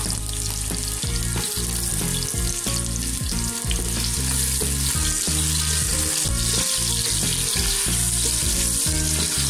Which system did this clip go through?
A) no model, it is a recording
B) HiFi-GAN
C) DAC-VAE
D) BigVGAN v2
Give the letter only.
A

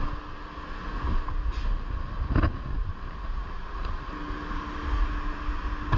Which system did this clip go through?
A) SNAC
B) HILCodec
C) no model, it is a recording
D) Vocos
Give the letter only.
C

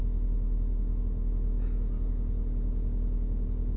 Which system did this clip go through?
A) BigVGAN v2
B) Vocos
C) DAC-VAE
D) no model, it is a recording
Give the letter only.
D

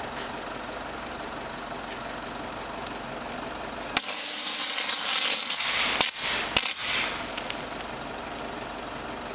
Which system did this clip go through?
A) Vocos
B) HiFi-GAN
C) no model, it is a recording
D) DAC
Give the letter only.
C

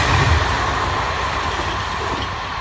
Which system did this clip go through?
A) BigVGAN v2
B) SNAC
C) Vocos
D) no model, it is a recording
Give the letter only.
D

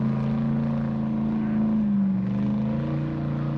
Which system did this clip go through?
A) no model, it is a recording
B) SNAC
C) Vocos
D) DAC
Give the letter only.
A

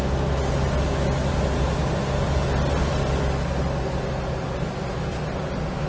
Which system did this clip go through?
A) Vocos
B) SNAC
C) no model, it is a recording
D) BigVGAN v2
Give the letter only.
C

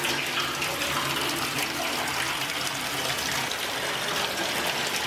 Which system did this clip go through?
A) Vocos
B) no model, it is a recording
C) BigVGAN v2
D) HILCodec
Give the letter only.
B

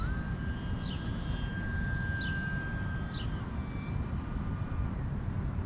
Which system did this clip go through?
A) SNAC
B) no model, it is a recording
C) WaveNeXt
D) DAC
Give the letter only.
B